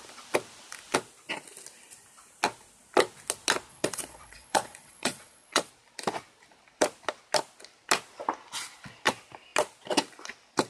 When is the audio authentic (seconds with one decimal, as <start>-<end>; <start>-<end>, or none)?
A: 0.0-3.7; 5.7-10.7